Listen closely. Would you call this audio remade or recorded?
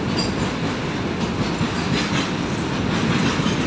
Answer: recorded